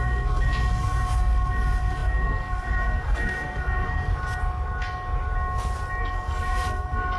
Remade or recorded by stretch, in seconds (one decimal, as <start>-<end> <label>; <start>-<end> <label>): 0.0-4.1 remade; 4.1-6.0 recorded; 6.0-7.2 remade